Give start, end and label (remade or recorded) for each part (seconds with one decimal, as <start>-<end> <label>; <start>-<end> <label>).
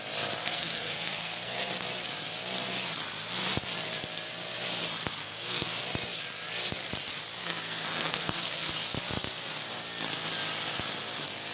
0.0-0.4 recorded; 0.4-1.7 remade; 1.7-5.2 recorded; 5.2-5.8 remade; 5.8-7.4 recorded; 7.4-8.7 remade; 8.7-11.5 recorded